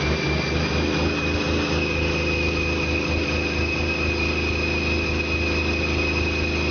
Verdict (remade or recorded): recorded